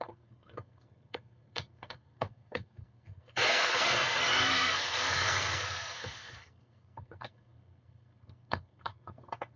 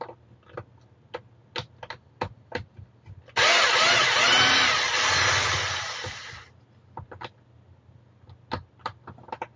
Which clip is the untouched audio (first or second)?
second